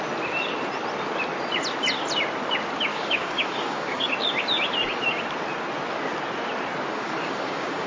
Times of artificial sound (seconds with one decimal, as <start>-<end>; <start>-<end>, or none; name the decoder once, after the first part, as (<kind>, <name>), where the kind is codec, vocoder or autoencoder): 2.9-4.1 (codec, DAC); 6.9-7.9